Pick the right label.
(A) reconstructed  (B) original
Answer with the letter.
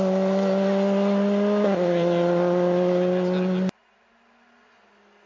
B